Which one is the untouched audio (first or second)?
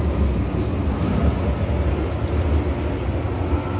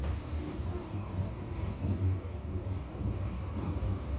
first